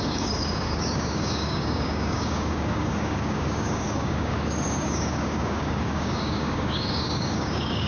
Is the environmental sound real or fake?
fake